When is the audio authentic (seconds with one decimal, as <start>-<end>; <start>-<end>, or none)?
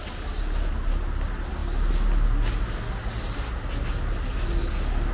0.0-5.1